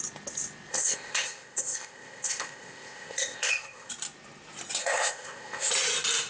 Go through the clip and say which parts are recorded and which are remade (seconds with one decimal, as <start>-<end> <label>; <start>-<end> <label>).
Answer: 0.0-0.7 recorded; 0.7-3.9 remade; 3.9-4.8 recorded; 4.8-5.7 remade; 5.7-6.3 recorded